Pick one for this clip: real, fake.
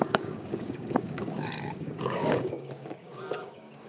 fake